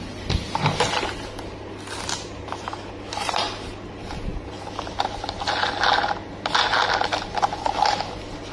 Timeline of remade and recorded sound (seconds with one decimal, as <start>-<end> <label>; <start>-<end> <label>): 0.0-8.5 recorded